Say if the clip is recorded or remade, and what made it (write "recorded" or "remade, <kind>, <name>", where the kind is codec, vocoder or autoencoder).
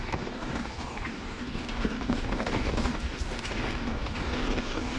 remade, codec, DAC